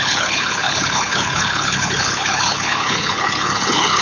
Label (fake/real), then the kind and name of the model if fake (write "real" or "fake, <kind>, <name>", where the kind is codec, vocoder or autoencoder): fake, codec, HILCodec